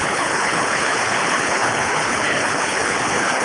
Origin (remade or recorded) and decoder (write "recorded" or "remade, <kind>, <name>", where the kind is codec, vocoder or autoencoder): remade, codec, HILCodec